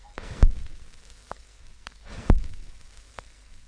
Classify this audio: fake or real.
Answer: fake